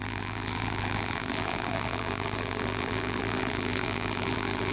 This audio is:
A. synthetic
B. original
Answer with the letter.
A